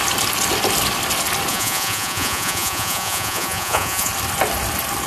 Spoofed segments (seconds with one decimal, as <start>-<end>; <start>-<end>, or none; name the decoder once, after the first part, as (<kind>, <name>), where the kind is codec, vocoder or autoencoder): 1.5-4.1 (vocoder, Vocos)